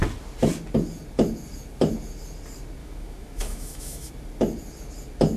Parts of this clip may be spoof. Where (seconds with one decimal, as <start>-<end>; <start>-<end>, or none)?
2.8-4.1

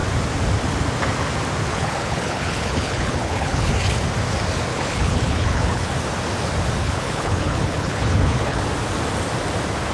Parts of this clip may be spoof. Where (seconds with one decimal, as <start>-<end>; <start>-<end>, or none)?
1.7-3.7; 4.7-5.9; 6.8-8.6

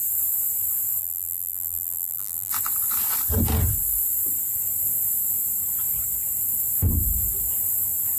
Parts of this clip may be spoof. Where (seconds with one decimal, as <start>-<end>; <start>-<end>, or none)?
1.0-2.5

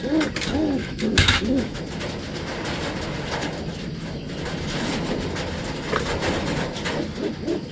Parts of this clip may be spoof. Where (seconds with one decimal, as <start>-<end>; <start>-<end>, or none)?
0.8-1.8